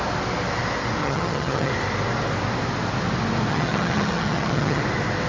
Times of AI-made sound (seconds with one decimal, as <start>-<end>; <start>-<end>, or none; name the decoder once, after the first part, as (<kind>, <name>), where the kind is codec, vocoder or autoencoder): 1.0-1.7 (vocoder, HiFi-GAN); 3.5-4.8